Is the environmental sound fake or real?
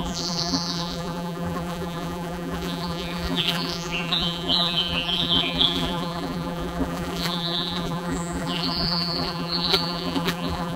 fake